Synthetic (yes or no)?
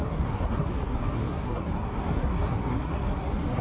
yes